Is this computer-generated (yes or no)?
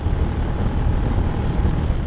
no